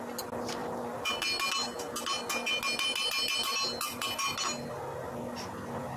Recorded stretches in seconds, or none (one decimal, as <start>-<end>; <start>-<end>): 0.0-6.0